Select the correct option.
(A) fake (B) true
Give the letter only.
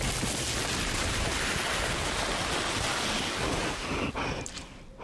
B